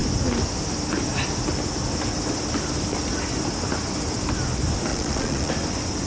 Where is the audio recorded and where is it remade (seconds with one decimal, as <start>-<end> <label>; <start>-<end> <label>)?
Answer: 0.0-4.9 recorded; 4.9-5.5 remade; 5.5-6.1 recorded